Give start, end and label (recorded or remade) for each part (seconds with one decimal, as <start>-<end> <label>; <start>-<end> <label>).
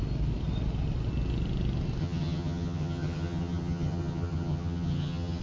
0.0-2.0 recorded; 2.0-5.4 remade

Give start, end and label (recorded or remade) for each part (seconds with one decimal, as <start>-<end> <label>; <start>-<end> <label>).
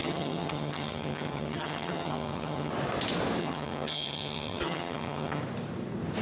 0.0-2.7 remade; 2.7-3.4 recorded; 3.4-5.4 remade; 5.4-6.2 recorded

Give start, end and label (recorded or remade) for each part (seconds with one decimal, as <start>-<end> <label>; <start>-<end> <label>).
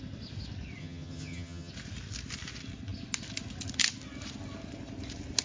0.0-0.8 recorded; 0.8-1.7 remade; 1.7-5.4 recorded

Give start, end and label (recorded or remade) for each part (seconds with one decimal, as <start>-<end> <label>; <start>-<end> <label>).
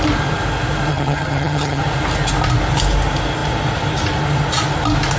0.0-0.9 recorded; 0.9-1.8 remade; 1.8-5.2 recorded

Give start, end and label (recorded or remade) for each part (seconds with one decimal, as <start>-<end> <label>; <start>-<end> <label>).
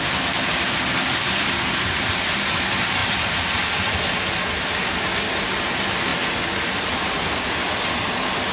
0.0-8.5 recorded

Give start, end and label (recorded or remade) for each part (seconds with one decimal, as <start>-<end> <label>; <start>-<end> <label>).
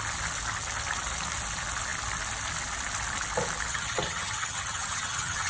0.0-3.7 recorded; 3.7-5.5 remade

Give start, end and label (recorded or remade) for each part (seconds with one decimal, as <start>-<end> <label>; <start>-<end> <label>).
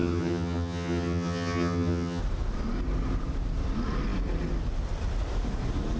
0.0-2.2 remade; 2.2-6.0 recorded